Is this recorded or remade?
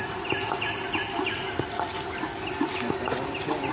recorded